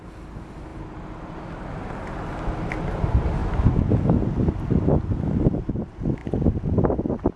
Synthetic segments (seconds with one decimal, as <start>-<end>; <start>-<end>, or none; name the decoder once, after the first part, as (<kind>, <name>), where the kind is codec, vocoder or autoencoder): none